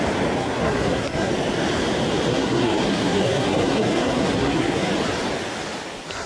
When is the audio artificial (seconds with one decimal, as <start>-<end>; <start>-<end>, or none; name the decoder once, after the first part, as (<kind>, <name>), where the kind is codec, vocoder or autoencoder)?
0.4-1.3 (codec, SNAC); 2.3-4.9